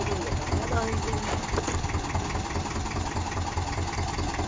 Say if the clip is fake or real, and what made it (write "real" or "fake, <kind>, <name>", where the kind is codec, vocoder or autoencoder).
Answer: real